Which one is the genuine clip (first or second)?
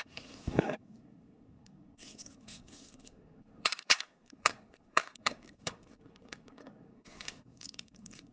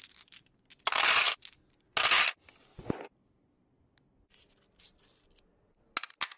second